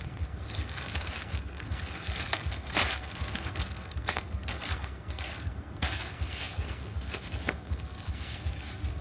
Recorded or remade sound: remade